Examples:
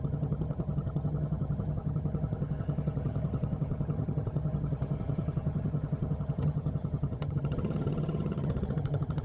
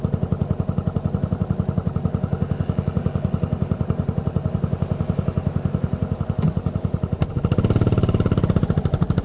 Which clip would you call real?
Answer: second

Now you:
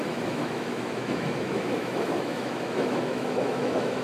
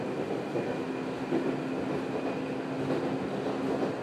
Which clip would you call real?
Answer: second